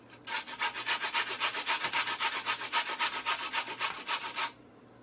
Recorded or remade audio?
recorded